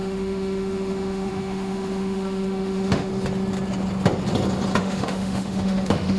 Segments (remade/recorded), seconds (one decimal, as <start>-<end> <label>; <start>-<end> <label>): 0.0-3.1 remade; 3.1-4.8 recorded; 4.8-6.2 remade